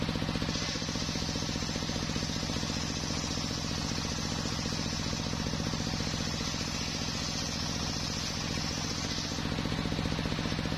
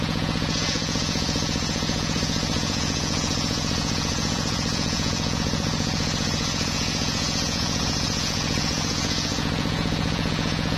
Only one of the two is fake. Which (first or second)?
second